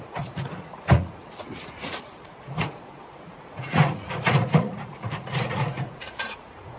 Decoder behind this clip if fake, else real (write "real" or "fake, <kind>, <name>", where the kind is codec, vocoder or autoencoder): fake, vocoder, Vocos